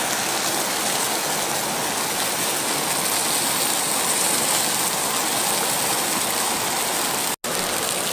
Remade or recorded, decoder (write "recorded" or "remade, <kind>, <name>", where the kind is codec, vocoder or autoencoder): recorded